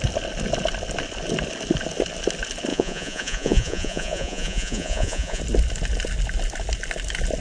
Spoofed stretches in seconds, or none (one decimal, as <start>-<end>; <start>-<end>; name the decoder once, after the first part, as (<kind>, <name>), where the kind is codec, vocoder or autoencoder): 2.7-5.4 (vocoder, Vocos)